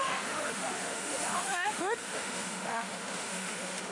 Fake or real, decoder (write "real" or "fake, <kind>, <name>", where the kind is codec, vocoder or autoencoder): fake, autoencoder, DAC-VAE